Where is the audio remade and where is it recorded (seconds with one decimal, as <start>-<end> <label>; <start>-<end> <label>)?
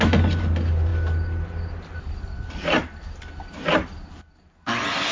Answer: 0.0-5.1 recorded